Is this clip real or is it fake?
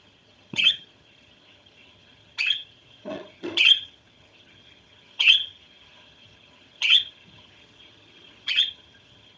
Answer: fake